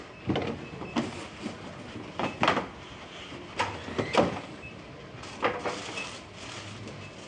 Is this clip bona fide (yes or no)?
yes